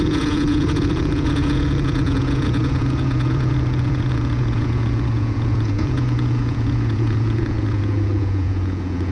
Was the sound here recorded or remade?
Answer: remade